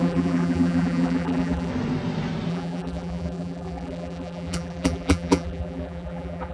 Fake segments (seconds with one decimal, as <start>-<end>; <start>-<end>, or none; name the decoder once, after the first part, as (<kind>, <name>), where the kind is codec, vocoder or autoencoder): 0.0-1.7 (vocoder, BigVGAN v2); 2.5-6.5